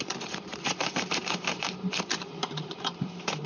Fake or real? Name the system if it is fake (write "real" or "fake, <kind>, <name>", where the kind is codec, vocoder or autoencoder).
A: fake, vocoder, BigVGAN v2